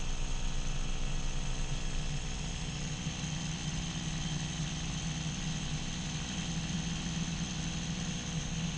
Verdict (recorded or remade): recorded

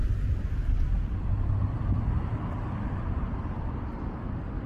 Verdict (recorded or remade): recorded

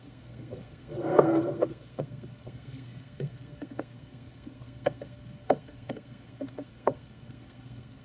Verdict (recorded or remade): remade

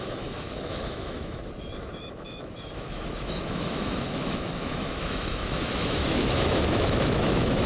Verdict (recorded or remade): remade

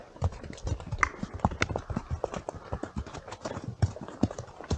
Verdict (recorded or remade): recorded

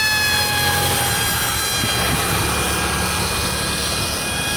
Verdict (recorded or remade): recorded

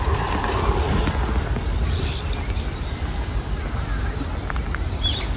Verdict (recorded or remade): recorded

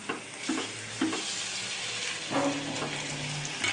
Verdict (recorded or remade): recorded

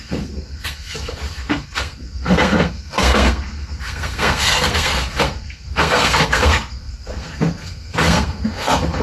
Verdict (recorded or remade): remade